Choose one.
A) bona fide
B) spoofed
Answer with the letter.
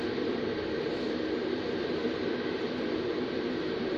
B